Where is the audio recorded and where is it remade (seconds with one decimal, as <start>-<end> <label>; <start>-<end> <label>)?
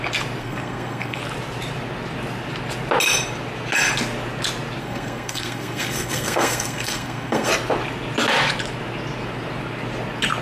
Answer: 0.0-0.4 recorded; 0.4-1.2 remade; 1.2-4.8 recorded; 4.8-7.5 remade; 7.5-10.4 recorded